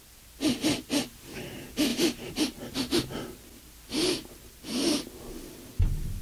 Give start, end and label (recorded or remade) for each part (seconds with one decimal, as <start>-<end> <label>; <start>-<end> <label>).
0.0-6.2 recorded